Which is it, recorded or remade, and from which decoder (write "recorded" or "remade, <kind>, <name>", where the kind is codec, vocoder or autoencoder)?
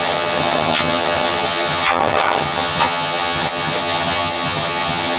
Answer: remade, vocoder, HiFi-GAN